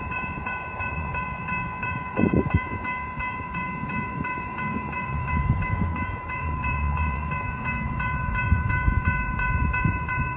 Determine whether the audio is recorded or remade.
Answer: remade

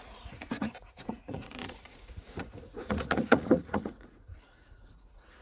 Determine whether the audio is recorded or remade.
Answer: remade